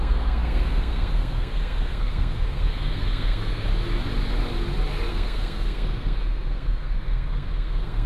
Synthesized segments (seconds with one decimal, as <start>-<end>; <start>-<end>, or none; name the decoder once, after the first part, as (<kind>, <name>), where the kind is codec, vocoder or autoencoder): 0.0-3.7 (codec, SNAC); 5.1-8.1